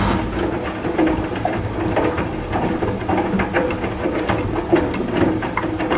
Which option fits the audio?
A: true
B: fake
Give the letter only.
A